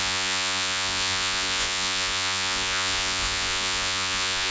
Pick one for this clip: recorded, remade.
remade